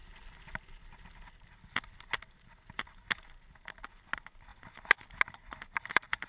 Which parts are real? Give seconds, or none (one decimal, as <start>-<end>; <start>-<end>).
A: 0.0-6.3